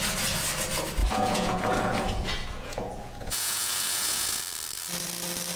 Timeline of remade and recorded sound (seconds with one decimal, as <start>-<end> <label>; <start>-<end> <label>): 0.0-1.0 recorded; 1.0-4.4 remade; 4.4-5.6 recorded